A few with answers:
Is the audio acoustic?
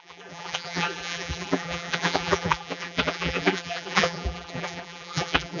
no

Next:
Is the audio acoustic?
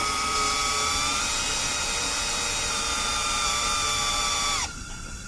no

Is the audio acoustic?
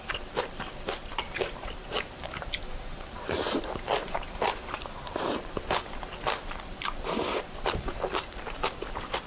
no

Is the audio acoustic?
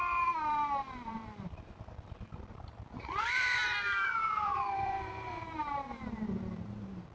no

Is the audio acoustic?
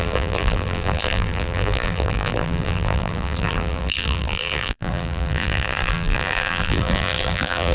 no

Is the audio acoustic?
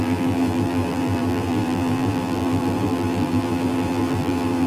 no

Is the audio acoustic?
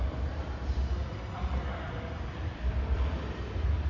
no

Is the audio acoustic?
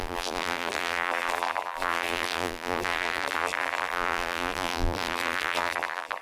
no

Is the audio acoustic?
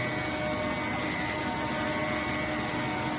yes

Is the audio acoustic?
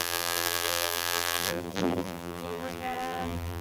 no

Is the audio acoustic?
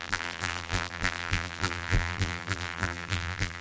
no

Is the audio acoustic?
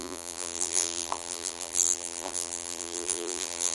no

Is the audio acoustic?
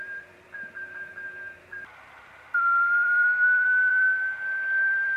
no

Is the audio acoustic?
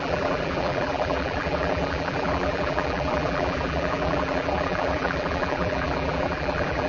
no